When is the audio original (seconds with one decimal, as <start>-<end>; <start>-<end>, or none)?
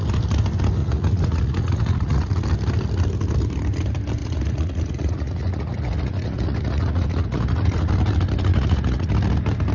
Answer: 0.0-0.8; 2.3-4.2; 7.9-8.5; 9.1-9.7